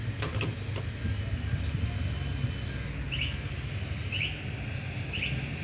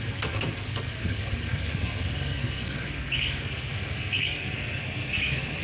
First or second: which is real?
first